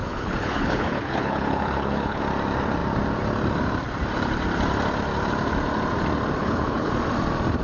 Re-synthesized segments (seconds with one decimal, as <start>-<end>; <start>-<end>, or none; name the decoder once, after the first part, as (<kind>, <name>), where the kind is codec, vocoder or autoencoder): 0.0-2.2 (codec, HILCodec); 6.4-6.9